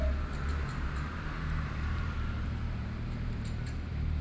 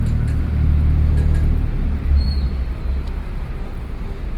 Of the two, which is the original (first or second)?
second